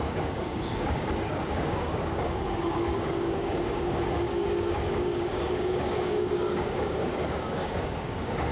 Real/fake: fake